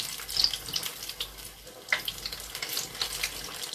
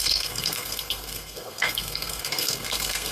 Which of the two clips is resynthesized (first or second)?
second